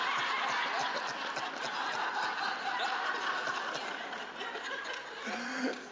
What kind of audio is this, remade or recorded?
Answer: recorded